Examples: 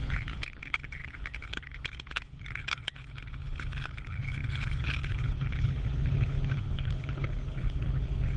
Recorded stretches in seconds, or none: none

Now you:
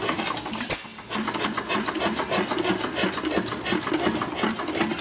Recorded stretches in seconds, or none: 0.0-5.0

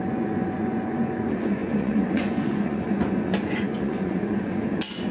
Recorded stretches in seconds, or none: none

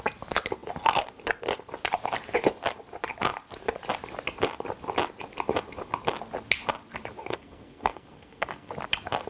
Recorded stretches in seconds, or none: 0.0-7.2; 8.7-9.3